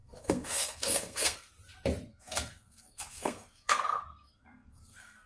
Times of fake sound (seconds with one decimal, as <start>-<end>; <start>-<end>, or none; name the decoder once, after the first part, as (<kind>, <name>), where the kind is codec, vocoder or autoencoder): 0.0-1.5 (codec, SNAC); 2.1-5.3